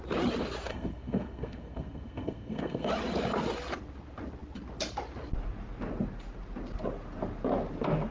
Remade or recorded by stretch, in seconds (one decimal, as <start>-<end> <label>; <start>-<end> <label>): 0.0-0.7 recorded; 0.7-2.9 remade; 2.9-8.1 recorded